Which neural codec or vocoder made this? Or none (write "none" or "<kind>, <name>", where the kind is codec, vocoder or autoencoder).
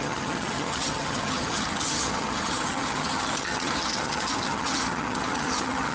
vocoder, HiFi-GAN